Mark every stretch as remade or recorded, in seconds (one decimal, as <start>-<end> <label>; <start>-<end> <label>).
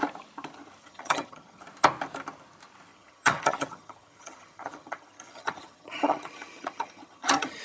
0.0-0.8 recorded; 0.8-1.6 remade; 1.6-2.9 recorded; 2.9-7.6 remade